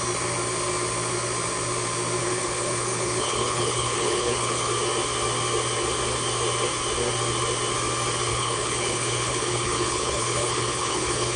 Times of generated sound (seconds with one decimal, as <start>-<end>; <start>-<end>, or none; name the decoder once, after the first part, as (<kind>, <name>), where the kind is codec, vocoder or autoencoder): 2.2-4.7 (codec, HILCodec); 8.3-11.4